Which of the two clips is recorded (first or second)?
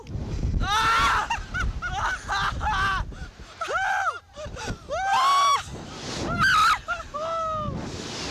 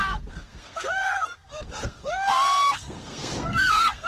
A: first